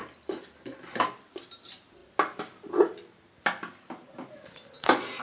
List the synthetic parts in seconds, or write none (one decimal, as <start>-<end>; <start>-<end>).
none